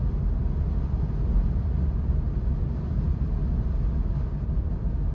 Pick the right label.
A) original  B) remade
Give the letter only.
A